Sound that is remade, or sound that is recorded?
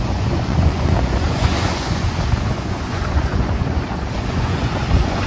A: remade